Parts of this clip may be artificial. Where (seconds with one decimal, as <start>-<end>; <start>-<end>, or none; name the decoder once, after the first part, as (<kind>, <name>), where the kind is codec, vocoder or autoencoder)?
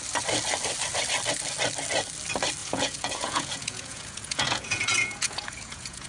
2.6-6.1 (vocoder, Vocos)